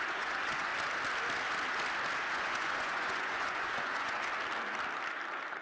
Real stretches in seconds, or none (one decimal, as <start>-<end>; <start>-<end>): 0.7-2.3; 4.3-5.6